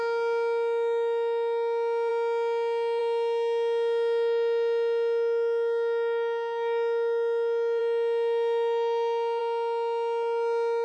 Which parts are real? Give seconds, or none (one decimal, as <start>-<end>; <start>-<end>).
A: 0.0-10.8